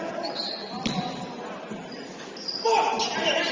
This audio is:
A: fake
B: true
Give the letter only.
B